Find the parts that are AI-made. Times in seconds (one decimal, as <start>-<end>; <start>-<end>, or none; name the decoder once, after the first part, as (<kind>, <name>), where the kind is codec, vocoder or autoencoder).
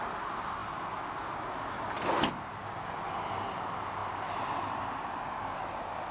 none